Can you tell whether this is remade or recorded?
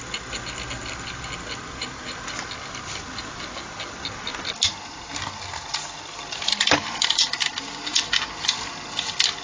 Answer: recorded